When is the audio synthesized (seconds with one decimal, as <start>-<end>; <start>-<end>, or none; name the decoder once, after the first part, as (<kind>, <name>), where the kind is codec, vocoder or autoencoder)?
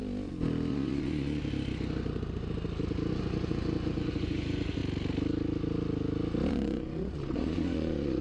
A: 0.7-1.4 (vocoder, Vocos); 3.1-4.8; 6.5-8.2